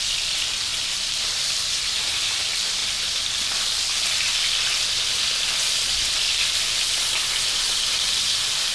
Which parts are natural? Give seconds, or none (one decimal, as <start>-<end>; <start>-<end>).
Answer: 2.8-7.4